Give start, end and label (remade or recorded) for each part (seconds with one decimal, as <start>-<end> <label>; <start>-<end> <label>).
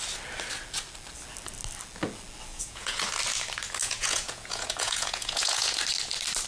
0.0-2.5 recorded; 2.5-3.0 remade; 3.0-3.8 recorded; 3.8-5.8 remade; 5.8-6.5 recorded